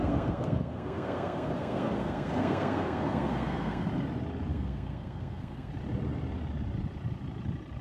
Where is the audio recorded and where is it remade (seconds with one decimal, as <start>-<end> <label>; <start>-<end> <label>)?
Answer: 0.0-3.9 remade; 3.9-4.5 recorded; 4.5-5.7 remade; 5.7-7.8 recorded